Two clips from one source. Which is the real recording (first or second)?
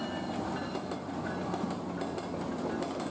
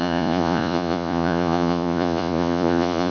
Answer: first